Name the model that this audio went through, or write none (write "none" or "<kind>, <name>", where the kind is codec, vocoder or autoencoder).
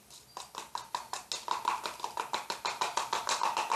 none